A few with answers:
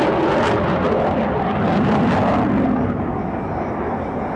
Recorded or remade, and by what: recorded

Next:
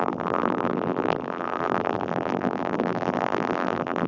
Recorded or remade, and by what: remade, vocoder, BigVGAN v2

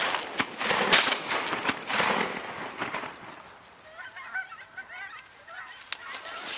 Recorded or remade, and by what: recorded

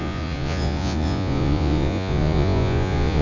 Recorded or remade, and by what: remade, vocoder, Vocos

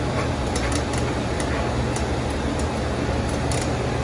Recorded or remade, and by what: recorded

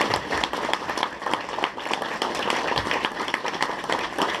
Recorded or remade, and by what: remade, vocoder, BigVGAN v2